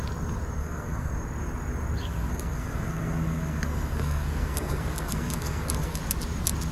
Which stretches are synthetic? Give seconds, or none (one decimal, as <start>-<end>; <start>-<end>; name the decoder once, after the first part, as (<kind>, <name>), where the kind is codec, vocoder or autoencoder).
0.6-1.1 (codec, SNAC); 2.0-6.0